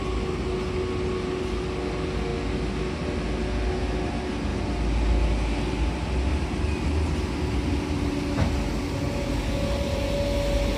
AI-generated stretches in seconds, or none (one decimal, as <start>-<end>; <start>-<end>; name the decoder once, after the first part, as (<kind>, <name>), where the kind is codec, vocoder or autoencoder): none